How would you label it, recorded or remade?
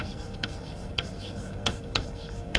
remade